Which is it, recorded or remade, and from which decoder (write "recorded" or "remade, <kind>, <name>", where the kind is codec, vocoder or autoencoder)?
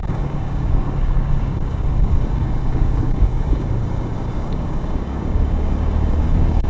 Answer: remade, codec, DAC